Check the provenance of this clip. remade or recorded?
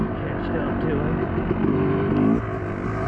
recorded